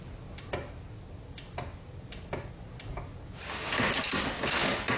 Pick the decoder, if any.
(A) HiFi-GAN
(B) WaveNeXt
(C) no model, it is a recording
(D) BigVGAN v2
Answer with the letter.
C